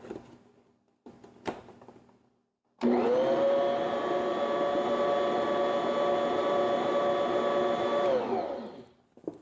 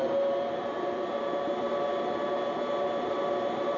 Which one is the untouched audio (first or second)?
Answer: first